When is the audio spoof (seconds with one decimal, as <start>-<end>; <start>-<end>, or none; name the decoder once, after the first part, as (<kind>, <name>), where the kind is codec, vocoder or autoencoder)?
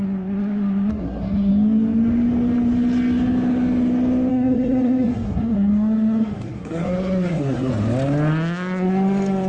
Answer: 0.9-1.5 (codec, SNAC); 4.3-7.7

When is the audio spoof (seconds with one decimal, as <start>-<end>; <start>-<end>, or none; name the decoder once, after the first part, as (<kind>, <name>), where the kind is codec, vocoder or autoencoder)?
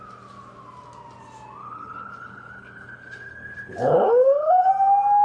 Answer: 1.6-4.7 (codec, HILCodec)